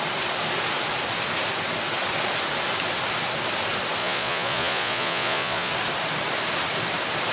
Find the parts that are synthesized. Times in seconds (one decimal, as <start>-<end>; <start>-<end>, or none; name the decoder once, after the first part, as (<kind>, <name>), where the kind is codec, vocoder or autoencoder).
4.0-5.7 (vocoder, Vocos)